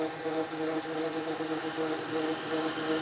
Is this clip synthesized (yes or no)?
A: no